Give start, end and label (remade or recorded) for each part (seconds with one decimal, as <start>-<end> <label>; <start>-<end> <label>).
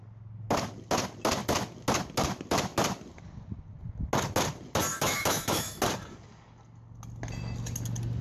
0.0-4.9 recorded; 4.9-5.8 remade; 5.8-8.2 recorded